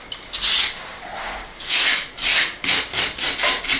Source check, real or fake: real